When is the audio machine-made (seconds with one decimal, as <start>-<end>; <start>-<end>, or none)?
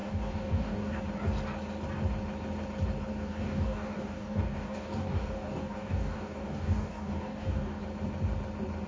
0.0-1.0; 3.1-7.8